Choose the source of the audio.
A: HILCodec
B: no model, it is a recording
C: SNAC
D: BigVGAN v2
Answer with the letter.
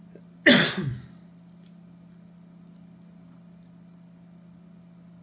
B